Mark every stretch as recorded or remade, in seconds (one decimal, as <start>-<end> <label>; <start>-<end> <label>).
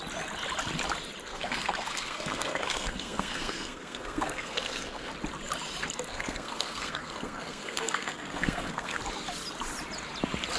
0.0-1.2 recorded; 1.2-5.1 remade; 5.1-6.1 recorded; 6.1-9.0 remade; 9.0-10.6 recorded